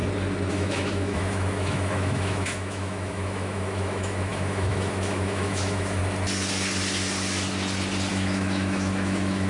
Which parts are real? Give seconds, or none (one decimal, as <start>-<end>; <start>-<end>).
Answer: 0.0-0.5; 6.0-8.1